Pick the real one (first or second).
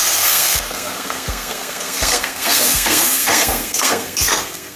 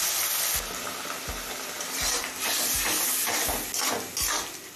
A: second